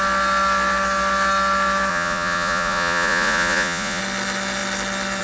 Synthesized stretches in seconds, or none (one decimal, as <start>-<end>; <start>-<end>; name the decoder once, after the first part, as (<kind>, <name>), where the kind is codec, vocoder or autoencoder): 1.9-4.0 (vocoder, Vocos)